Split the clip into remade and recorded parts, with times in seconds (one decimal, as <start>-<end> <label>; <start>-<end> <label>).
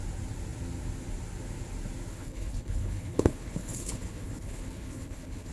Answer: 0.0-2.1 recorded; 2.1-5.5 remade